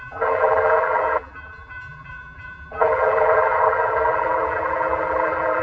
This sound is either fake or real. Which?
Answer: fake